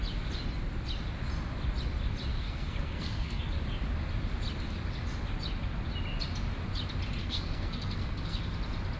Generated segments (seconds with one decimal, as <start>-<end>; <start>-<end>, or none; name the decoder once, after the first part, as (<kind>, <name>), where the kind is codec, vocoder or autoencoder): 2.3-3.4 (codec, SNAC); 7.2-8.4